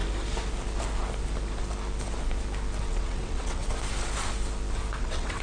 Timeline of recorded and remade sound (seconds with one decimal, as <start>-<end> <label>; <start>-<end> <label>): 0.0-2.9 recorded; 2.9-3.6 remade; 3.6-5.0 recorded; 5.0-5.4 remade

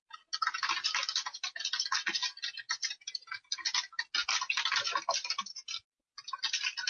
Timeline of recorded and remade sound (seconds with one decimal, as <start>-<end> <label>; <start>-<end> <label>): 0.0-1.1 recorded; 1.1-1.6 remade; 1.6-6.9 recorded